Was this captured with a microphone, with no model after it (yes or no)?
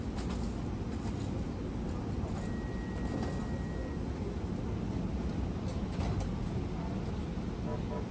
yes